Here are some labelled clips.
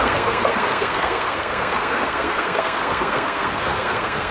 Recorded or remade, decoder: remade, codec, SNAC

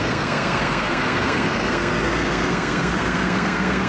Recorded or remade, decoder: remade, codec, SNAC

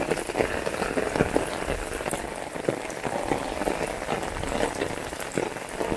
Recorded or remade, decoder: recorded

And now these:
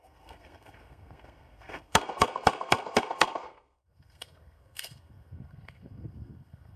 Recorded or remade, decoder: remade, codec, SNAC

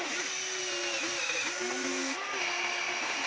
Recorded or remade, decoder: recorded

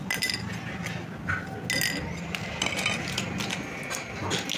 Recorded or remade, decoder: recorded